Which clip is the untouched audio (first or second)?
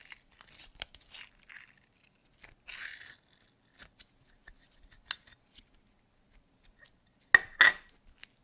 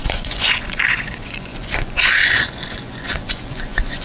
first